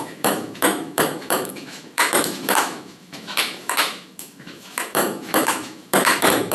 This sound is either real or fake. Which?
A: fake